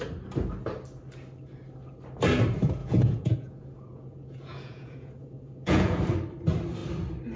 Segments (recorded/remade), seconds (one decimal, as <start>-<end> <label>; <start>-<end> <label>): 0.0-2.8 recorded; 2.8-6.0 remade; 6.0-7.4 recorded